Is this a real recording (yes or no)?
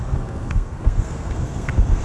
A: no